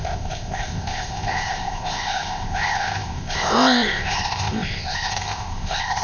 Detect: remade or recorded remade